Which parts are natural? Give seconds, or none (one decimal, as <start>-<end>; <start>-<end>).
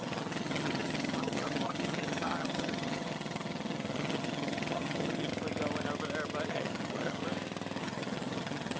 5.3-6.5; 7.2-7.8